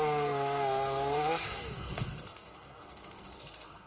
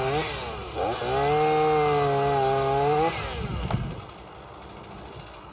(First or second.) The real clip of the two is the second